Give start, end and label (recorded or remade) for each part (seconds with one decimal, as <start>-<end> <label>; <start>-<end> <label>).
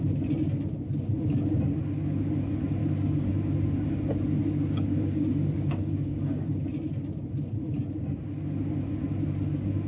0.0-2.8 recorded; 2.8-3.3 remade; 3.3-4.4 recorded; 4.4-6.6 remade; 6.6-9.9 recorded